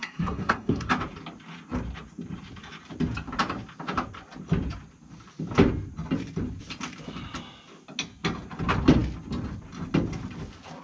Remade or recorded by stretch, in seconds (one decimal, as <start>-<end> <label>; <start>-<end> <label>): 0.0-0.9 remade; 0.9-10.8 recorded